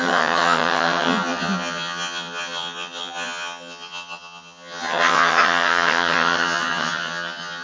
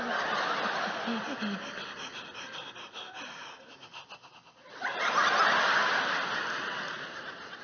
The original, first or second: second